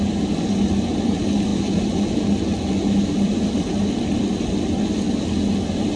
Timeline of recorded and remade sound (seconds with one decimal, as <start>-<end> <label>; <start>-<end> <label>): 0.0-6.0 recorded